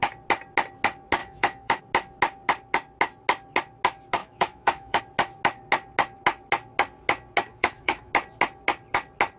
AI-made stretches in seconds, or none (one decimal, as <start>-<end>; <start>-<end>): 1.2-1.8; 4.2-5.0; 7.5-8.1